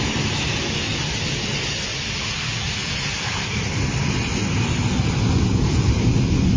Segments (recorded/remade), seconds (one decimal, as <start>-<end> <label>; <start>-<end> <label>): 0.0-2.6 recorded; 2.6-6.6 remade